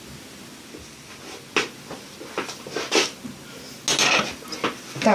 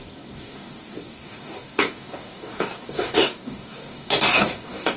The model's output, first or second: second